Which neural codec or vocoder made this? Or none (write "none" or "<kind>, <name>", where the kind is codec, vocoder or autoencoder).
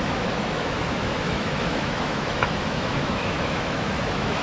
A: autoencoder, DAC-VAE